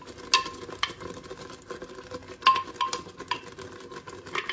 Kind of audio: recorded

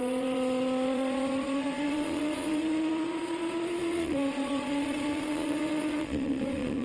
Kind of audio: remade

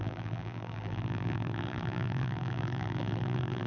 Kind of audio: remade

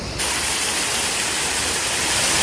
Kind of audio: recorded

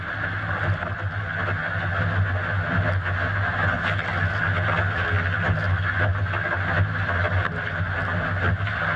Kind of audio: recorded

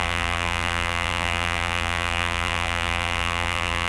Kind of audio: remade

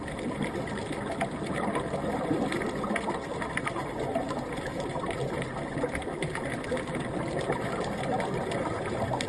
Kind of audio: recorded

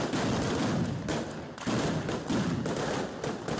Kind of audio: recorded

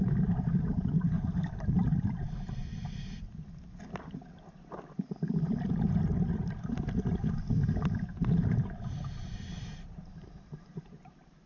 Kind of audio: recorded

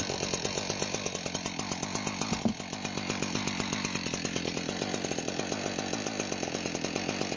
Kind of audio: recorded